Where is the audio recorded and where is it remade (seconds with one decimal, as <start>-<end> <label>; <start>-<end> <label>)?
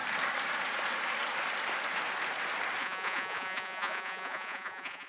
0.0-2.8 recorded; 2.8-5.1 remade